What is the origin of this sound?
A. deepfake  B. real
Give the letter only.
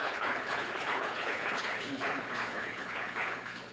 A